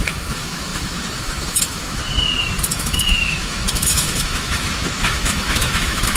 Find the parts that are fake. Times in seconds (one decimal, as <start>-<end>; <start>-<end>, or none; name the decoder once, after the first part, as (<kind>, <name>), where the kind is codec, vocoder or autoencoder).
0.0-2.0 (autoencoder, DAC-VAE); 2.7-6.2